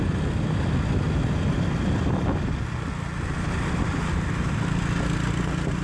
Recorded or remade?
recorded